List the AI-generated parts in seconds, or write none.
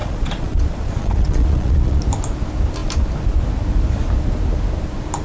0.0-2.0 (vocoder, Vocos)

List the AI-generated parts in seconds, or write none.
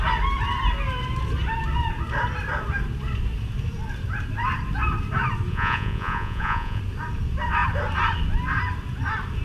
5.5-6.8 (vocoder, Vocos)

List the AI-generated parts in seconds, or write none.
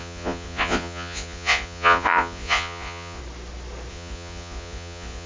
0.0-3.2 (vocoder, Vocos); 3.9-5.3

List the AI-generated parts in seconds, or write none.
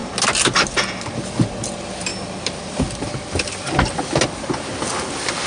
none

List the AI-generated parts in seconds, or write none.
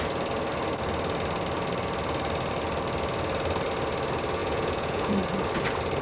4.4-5.1 (vocoder, Vocos)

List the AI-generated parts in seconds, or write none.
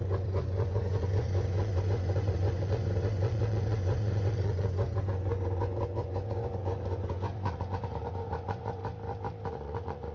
0.0-8.8 (vocoder, Vocos); 9.5-10.1